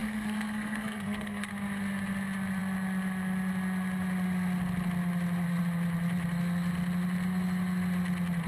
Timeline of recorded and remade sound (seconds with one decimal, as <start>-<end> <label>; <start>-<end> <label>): 0.0-1.5 remade; 1.5-8.5 recorded